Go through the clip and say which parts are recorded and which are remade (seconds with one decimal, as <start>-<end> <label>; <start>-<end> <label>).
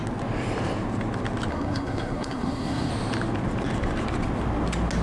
0.0-1.5 recorded; 1.5-2.9 remade; 2.9-5.0 recorded